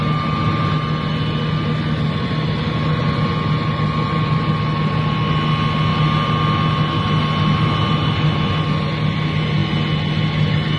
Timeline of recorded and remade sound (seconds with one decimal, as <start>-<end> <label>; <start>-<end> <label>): 0.0-10.8 recorded